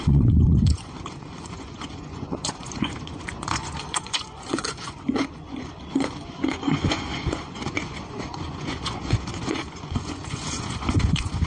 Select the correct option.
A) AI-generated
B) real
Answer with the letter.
A